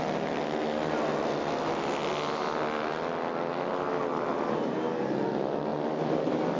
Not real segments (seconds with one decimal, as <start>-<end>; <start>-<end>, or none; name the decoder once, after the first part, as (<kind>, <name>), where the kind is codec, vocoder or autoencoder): none